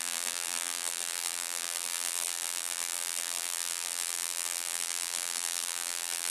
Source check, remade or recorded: remade